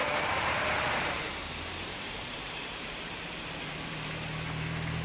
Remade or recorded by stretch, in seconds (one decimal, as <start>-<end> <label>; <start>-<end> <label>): 0.0-3.0 remade; 3.0-5.0 recorded